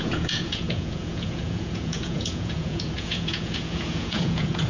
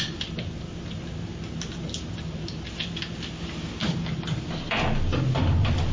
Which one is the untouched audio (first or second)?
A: second